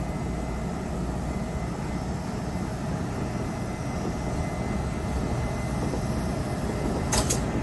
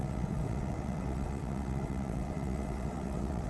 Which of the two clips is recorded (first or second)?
first